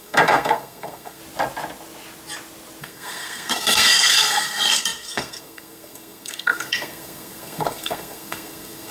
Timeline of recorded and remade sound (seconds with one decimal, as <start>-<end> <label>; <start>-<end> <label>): 0.0-1.2 remade; 1.2-2.8 recorded; 2.8-8.9 remade